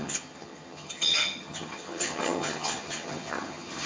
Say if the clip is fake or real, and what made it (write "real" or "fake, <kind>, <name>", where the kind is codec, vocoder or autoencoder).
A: fake, vocoder, HiFi-GAN